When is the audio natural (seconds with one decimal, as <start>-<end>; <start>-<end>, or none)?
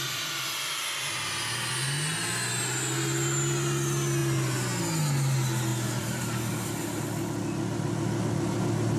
0.0-5.7; 7.0-9.0